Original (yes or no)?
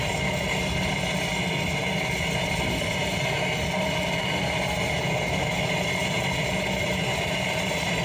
yes